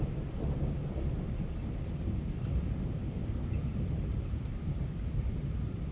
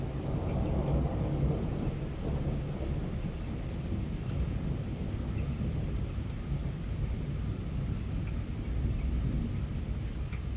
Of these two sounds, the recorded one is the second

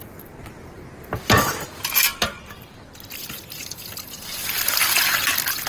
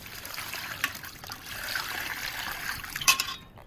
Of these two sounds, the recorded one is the first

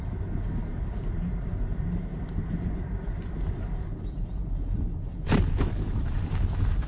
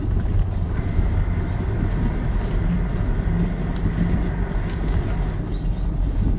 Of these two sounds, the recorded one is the second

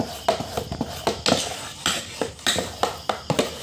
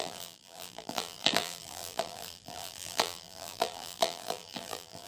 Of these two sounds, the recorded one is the first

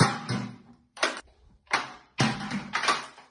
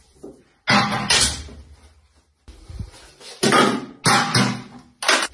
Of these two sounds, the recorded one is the second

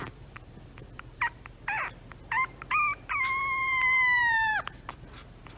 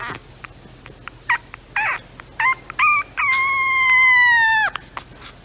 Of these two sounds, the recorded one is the second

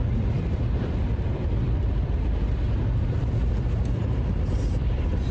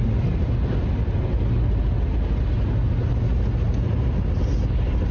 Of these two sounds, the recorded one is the second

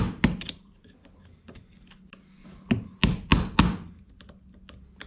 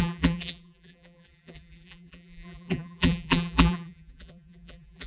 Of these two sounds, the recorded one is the first